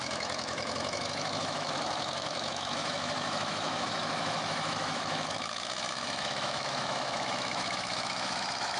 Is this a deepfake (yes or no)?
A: yes